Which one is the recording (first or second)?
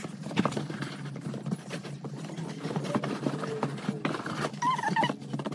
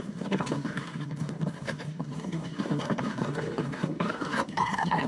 first